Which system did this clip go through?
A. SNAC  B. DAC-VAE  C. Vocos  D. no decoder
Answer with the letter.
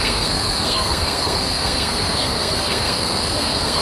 A